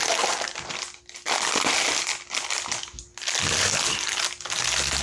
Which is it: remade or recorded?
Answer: recorded